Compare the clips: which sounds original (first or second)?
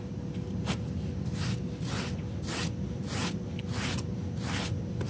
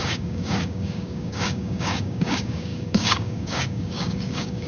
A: first